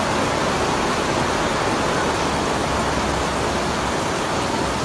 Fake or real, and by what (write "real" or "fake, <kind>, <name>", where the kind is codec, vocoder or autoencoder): real